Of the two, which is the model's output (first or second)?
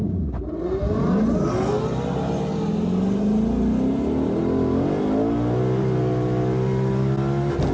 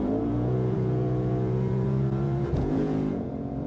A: second